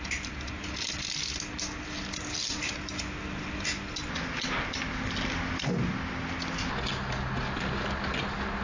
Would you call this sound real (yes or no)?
yes